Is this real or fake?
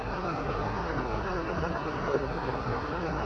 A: fake